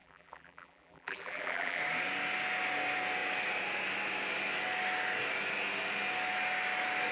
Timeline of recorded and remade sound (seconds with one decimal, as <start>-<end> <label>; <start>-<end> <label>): 0.0-1.8 remade; 1.8-7.1 recorded